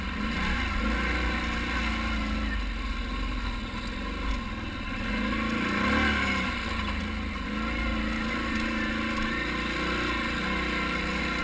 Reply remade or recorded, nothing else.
recorded